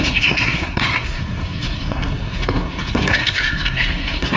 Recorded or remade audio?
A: remade